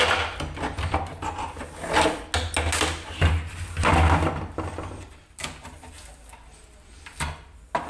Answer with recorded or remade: recorded